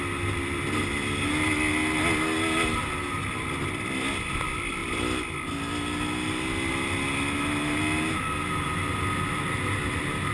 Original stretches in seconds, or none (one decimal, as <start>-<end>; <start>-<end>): 0.0-10.3